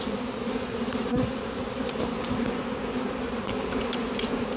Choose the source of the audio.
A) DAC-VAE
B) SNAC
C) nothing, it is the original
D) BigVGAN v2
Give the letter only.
D